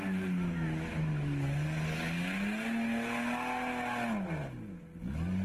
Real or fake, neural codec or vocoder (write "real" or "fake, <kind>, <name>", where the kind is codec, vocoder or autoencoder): real